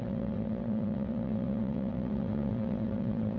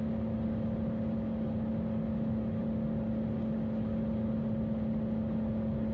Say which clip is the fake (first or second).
first